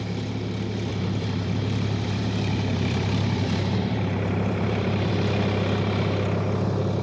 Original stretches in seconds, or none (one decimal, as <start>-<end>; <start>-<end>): 0.0-0.9; 5.1-7.0